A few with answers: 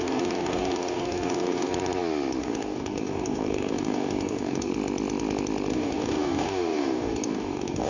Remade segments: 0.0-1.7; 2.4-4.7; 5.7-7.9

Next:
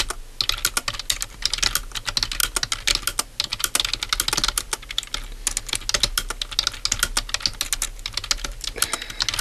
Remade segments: none

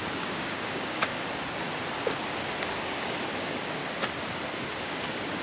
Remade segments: 0.0-1.1; 2.7-3.8; 4.8-5.4

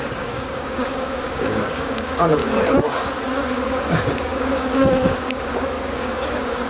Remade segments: 0.0-2.4; 3.5-6.7

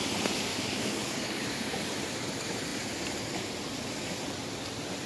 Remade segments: 0.5-1.8